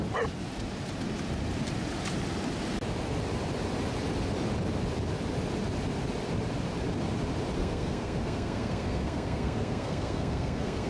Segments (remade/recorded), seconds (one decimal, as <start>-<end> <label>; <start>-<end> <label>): 0.0-7.6 recorded; 7.6-10.9 remade